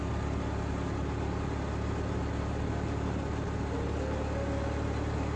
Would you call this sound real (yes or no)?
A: yes